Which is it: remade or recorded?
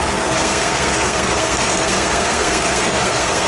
remade